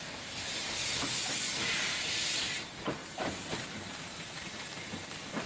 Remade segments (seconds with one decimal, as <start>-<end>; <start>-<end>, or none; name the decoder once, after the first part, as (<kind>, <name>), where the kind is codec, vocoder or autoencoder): 3.0-4.7 (vocoder, BigVGAN v2)